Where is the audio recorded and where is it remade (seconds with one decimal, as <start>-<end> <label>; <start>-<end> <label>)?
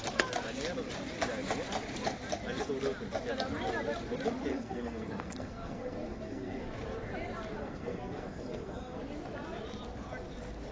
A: 0.0-4.5 recorded; 4.5-6.6 remade; 6.6-7.6 recorded; 7.6-9.0 remade; 9.0-10.7 recorded